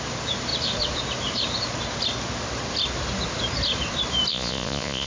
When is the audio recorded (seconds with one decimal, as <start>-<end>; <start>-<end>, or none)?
0.0-4.3